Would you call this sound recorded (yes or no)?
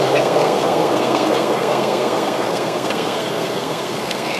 no